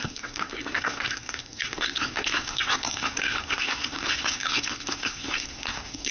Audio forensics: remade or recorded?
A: remade